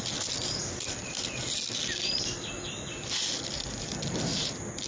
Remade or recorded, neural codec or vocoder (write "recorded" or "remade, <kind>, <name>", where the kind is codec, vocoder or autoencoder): recorded